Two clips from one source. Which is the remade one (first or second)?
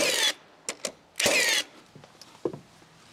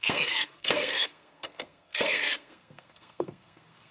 second